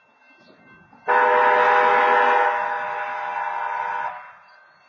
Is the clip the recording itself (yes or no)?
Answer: yes